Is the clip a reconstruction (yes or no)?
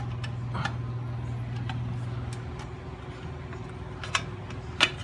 no